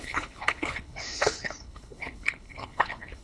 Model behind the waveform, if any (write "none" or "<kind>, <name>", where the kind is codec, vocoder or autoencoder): codec, HILCodec